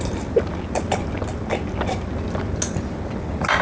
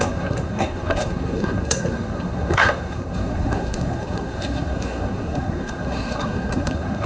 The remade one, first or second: second